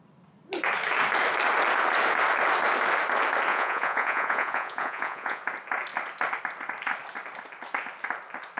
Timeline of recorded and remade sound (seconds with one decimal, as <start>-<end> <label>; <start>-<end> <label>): 0.0-3.5 recorded; 3.5-5.4 remade; 5.4-8.6 recorded